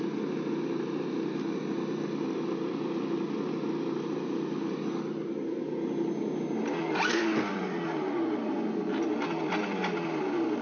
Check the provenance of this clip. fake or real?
real